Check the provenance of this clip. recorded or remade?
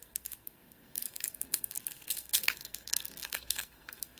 remade